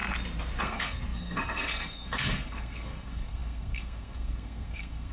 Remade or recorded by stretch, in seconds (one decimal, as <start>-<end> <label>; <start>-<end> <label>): 0.0-0.6 recorded; 0.6-5.1 remade